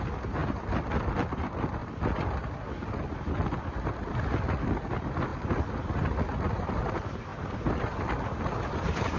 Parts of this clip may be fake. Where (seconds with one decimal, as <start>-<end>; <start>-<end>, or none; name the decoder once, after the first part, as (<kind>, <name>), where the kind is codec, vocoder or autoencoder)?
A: 0.0-1.8 (vocoder, BigVGAN v2); 3.1-5.3; 6.8-9.2